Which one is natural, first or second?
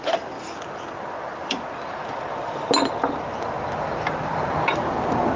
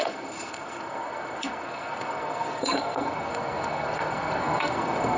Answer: first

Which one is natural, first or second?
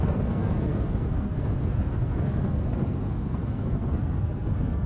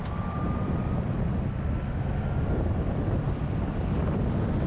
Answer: second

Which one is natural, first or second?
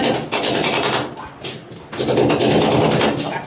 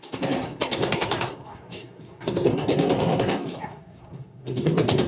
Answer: first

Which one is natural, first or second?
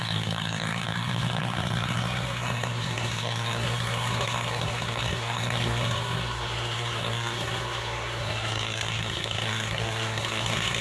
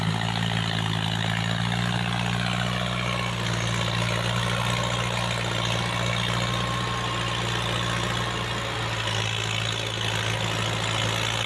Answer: second